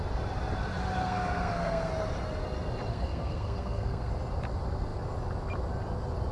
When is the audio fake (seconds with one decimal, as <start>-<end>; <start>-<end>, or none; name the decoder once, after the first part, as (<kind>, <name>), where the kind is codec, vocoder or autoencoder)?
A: 1.0-1.9 (codec, SNAC); 2.9-4.1